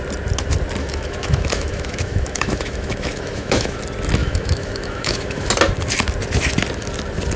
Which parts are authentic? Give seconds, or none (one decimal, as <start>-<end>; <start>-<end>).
0.0-0.8; 3.8-4.2; 5.5-7.4